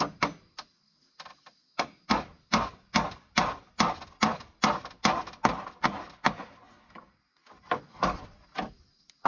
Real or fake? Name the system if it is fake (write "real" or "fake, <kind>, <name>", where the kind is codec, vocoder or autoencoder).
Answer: real